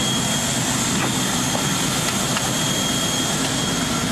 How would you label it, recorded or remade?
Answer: recorded